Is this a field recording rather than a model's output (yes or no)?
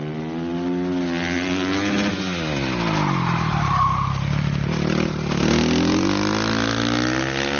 yes